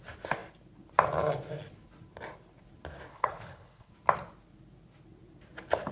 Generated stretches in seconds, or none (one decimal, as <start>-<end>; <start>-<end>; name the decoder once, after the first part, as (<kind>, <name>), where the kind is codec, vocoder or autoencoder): 3.1-3.9 (codec, HILCodec)